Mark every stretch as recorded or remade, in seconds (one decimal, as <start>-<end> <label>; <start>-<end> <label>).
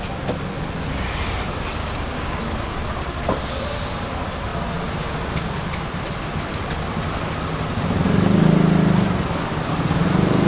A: 0.0-1.8 recorded; 1.8-2.4 remade; 2.4-10.5 recorded